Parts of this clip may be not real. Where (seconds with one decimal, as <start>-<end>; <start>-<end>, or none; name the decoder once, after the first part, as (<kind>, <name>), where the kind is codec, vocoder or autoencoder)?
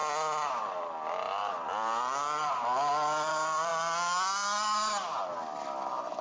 0.5-3.7 (vocoder, BigVGAN v2); 5.2-6.2